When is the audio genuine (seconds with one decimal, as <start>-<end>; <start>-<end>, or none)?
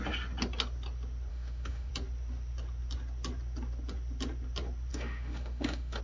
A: 0.0-1.3; 1.9-4.9